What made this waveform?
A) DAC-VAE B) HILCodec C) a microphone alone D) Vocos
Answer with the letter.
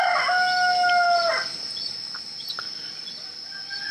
C